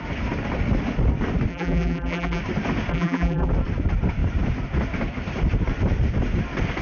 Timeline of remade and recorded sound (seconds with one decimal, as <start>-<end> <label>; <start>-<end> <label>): 0.0-1.5 recorded; 1.5-2.4 remade; 2.4-2.9 recorded; 2.9-3.5 remade; 3.5-6.8 recorded